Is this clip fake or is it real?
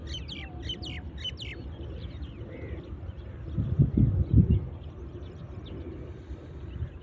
real